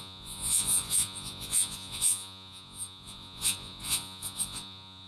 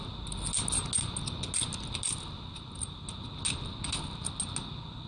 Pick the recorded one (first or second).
second